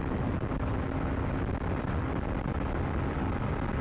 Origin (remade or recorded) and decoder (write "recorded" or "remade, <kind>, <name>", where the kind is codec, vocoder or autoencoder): recorded